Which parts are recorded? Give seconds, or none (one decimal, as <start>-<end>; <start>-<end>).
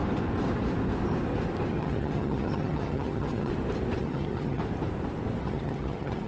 0.0-1.7; 3.5-4.0; 4.6-5.4